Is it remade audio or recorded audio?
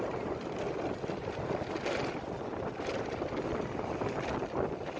recorded